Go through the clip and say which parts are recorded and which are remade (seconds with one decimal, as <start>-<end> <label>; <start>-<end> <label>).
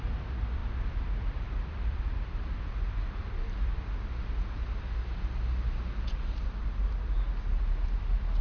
0.0-0.6 recorded; 0.6-2.4 remade; 2.4-8.4 recorded